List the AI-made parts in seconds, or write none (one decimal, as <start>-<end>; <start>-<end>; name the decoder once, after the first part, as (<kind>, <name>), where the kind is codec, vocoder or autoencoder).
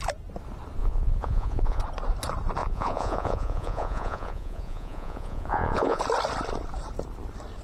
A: 0.8-1.8 (vocoder, Vocos); 2.6-6.0